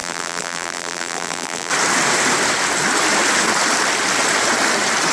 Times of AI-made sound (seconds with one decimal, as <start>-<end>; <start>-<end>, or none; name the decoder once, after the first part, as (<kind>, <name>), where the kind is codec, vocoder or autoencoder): 0.0-1.7 (vocoder, BigVGAN v2)